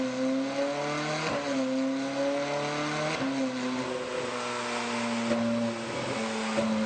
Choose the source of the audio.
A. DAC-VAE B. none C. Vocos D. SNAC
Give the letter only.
B